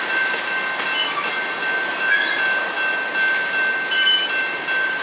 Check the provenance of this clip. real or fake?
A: real